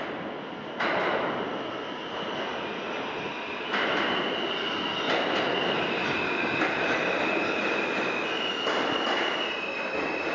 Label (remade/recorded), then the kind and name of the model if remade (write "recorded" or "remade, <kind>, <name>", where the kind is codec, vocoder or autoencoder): recorded